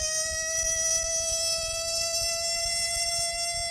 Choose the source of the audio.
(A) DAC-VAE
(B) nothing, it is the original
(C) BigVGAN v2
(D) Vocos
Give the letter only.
B